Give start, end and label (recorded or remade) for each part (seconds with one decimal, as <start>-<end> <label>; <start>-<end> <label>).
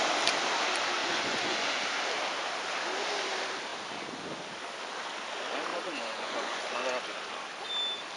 0.0-1.0 recorded; 1.0-1.8 remade; 1.8-5.7 recorded; 5.7-6.7 remade; 6.7-8.2 recorded